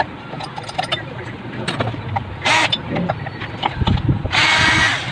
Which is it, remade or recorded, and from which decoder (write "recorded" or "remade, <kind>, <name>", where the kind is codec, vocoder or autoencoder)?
recorded